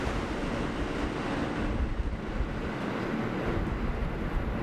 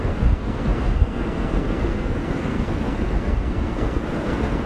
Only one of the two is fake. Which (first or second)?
second